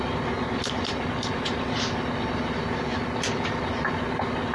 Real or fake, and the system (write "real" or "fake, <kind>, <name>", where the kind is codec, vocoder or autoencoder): real